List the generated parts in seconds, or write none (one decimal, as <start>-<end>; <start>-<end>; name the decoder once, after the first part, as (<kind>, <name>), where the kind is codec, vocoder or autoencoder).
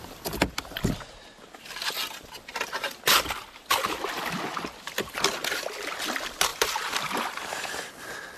2.5-3.1 (vocoder, BigVGAN v2); 6.5-7.7